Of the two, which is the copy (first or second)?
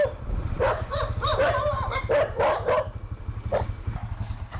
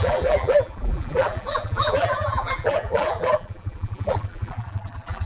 second